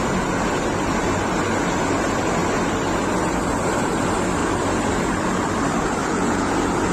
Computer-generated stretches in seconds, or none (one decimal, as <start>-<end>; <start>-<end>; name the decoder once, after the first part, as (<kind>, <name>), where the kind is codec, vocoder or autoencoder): 6.0-6.5 (vocoder, Vocos)